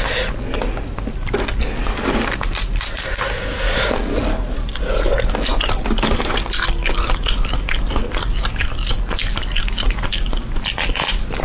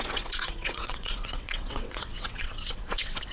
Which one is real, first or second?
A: first